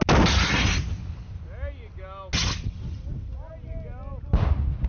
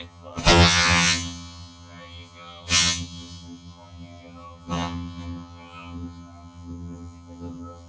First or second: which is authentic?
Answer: first